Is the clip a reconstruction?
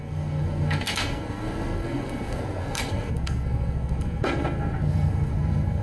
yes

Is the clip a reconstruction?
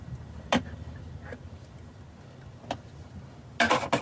no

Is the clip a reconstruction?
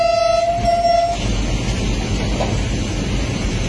no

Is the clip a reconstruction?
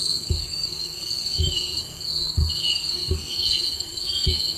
yes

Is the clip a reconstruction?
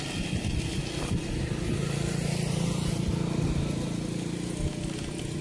no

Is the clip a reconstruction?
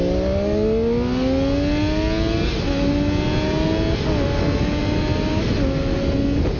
no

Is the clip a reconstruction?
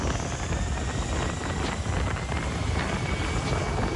no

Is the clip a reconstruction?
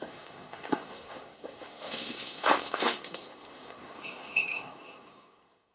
yes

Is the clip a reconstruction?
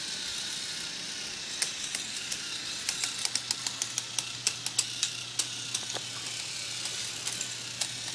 no